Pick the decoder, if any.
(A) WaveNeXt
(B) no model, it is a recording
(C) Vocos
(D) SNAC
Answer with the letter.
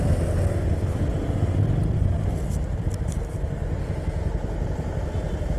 B